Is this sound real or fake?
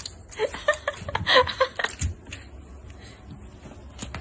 real